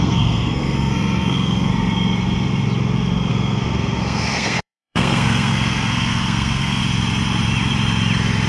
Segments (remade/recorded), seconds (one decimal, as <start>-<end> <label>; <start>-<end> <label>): 0.0-1.7 remade; 1.7-3.3 recorded; 3.3-6.8 remade; 6.8-8.5 recorded